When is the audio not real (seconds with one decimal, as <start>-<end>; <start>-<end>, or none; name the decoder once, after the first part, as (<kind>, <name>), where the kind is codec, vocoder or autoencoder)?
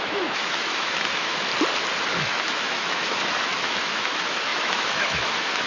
0.0-1.5 (autoencoder, DAC-VAE); 2.2-5.7